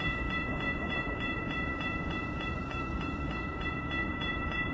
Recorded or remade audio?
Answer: remade